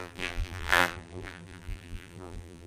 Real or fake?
fake